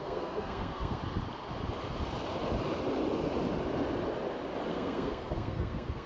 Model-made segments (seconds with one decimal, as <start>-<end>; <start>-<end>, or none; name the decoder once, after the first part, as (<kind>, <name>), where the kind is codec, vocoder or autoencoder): 0.0-1.0 (codec, SNAC); 4.7-6.1